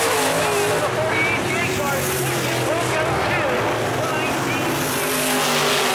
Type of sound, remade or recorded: recorded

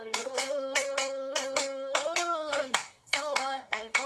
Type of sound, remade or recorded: remade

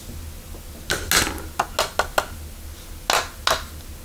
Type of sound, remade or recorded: recorded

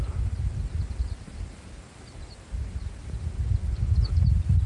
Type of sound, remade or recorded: recorded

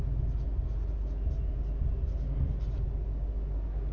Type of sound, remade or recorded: recorded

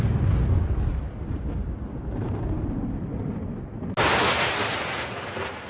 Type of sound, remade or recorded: recorded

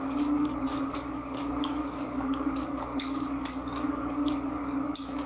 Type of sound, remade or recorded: remade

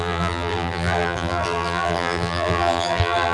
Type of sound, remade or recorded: remade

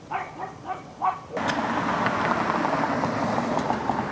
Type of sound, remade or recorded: recorded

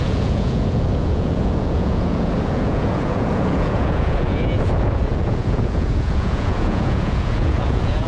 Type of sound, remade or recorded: remade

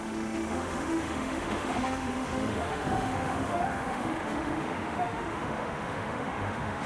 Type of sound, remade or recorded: remade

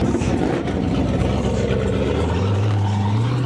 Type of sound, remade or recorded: remade